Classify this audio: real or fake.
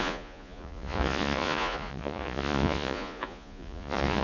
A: fake